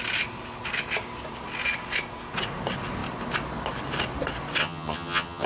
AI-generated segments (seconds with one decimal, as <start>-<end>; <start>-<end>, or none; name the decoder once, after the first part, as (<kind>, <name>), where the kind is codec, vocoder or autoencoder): 4.6-5.5 (vocoder, HiFi-GAN)